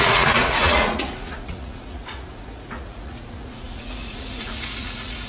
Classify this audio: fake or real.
fake